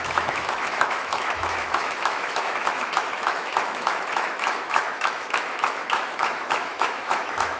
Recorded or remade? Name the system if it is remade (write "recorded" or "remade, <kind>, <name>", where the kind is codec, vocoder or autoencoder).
remade, autoencoder, DAC-VAE